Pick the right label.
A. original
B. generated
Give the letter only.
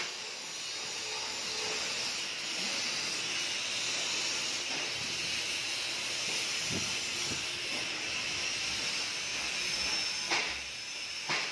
A